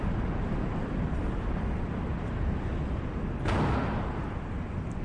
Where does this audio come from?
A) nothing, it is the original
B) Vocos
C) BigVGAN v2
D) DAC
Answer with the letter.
A